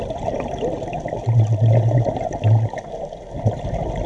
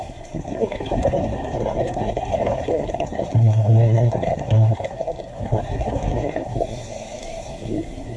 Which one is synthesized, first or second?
second